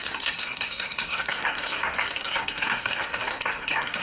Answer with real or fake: fake